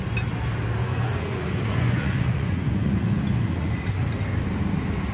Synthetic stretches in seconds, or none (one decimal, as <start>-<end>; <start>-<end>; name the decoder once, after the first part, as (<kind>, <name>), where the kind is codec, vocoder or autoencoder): 0.8-3.9 (vocoder, Vocos)

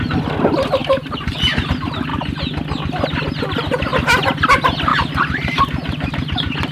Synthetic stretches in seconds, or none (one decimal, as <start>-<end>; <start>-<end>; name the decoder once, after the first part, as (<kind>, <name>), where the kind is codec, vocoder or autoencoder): 0.8-1.7 (vocoder, BigVGAN v2); 4.9-6.7

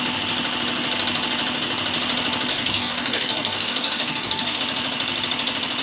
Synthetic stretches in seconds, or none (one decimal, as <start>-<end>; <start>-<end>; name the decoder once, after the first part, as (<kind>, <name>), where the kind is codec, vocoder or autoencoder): 2.5-4.6 (codec, DAC)

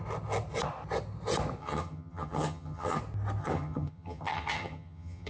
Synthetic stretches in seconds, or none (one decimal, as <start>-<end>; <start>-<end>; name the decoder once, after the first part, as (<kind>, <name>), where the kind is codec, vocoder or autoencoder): 1.6-3.0 (vocoder, HiFi-GAN); 3.4-5.3

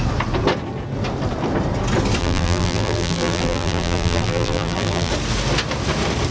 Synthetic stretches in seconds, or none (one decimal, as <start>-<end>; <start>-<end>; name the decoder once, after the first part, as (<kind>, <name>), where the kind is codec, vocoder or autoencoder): 2.2-5.1 (vocoder, BigVGAN v2)